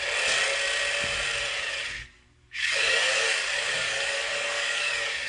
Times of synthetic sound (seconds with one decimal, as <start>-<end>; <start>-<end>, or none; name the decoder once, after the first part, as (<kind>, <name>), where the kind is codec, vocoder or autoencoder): 2.0-5.3 (codec, DAC)